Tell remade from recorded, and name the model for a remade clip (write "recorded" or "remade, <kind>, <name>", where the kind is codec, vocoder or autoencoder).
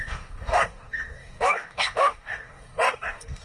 remade, codec, DAC